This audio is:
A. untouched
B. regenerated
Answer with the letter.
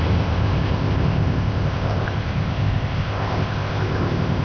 B